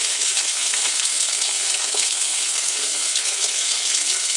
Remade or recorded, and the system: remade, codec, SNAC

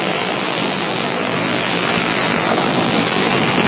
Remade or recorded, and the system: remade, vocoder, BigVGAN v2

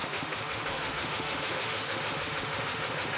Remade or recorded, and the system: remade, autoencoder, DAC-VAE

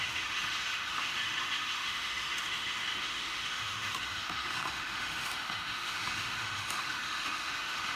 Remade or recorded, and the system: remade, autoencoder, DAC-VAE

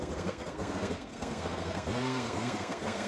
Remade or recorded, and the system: remade, codec, SNAC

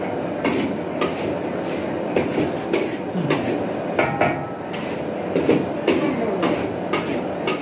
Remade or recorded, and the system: recorded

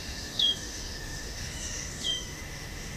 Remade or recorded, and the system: remade, autoencoder, DAC-VAE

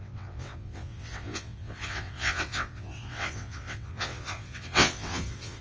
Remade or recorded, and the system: remade, vocoder, WaveNeXt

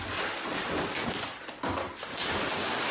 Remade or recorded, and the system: recorded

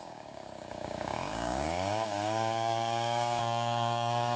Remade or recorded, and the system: remade, codec, DAC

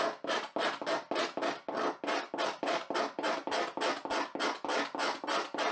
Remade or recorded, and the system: recorded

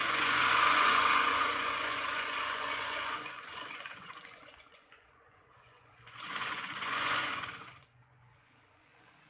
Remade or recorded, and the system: remade, vocoder, Vocos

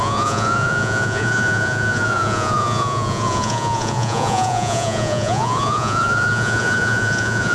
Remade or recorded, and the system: remade, vocoder, Vocos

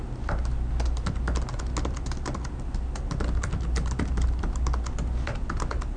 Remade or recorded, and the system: recorded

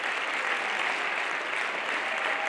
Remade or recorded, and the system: recorded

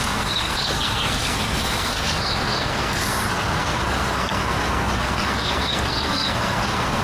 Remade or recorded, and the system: remade, codec, SNAC